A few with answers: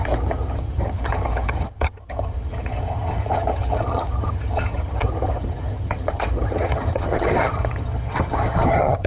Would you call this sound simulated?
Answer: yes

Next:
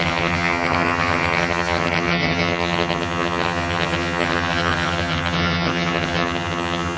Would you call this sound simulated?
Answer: yes